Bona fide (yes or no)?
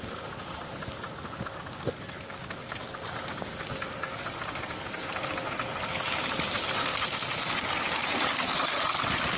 yes